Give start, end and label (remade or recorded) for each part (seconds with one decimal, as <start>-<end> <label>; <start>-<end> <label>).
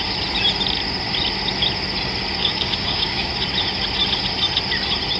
0.0-2.4 recorded; 2.4-3.3 remade; 3.3-5.2 recorded